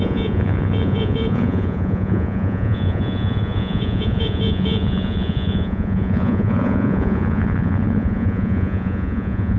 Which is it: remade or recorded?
remade